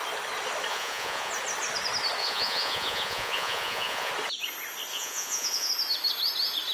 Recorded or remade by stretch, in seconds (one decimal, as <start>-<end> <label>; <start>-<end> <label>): 0.0-0.7 recorded; 0.7-1.3 remade; 1.3-2.2 recorded; 2.2-4.1 remade; 4.1-4.9 recorded; 4.9-5.7 remade; 5.7-6.7 recorded